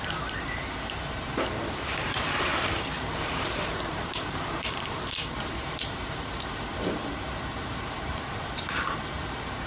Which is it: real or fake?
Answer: fake